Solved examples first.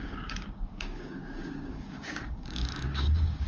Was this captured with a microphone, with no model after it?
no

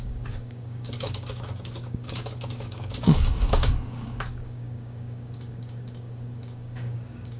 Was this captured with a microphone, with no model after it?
no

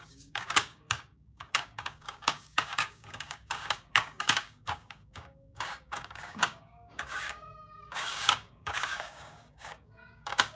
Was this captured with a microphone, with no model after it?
no